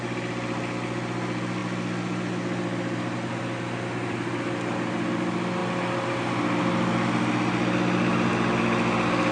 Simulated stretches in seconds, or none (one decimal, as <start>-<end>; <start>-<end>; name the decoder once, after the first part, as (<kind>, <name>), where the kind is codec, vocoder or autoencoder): none